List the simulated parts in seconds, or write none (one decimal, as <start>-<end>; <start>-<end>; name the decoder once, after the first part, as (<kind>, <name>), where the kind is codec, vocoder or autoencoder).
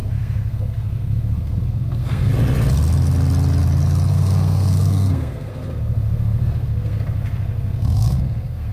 0.0-2.3 (codec, SNAC); 4.1-8.7